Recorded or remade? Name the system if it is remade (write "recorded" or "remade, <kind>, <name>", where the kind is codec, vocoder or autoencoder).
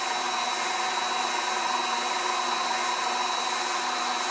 recorded